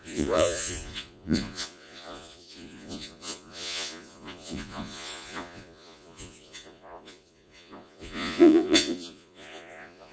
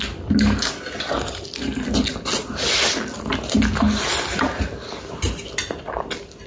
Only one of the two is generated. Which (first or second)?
first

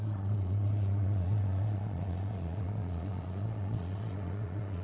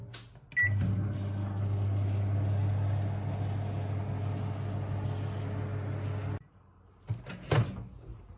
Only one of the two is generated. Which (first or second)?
first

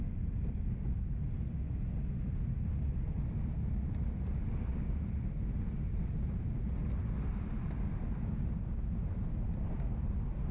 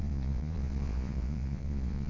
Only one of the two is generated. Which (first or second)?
second